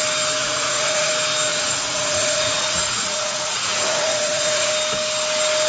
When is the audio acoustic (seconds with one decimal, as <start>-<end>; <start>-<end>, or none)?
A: 0.0-0.4; 1.1-1.5; 4.7-5.7